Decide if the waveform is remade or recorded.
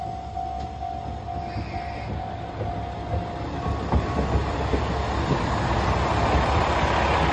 recorded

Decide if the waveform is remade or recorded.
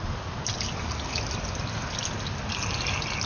recorded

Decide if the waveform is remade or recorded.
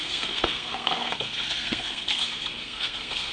remade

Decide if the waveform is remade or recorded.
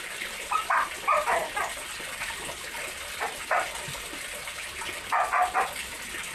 recorded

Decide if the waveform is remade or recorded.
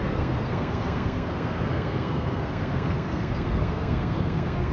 remade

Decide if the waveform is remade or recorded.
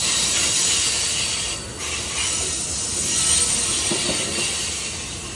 recorded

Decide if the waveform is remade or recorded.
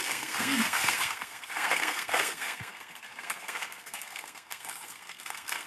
remade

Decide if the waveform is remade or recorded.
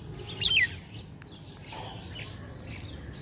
recorded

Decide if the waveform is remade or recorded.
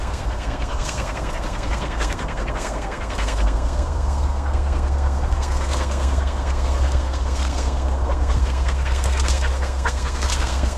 remade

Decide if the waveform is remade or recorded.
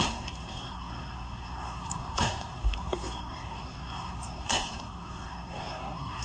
remade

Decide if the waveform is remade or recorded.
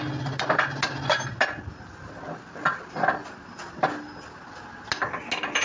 recorded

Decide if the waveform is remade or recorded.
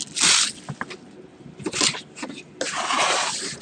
recorded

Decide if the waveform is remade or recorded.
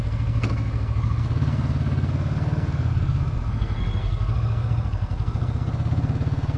remade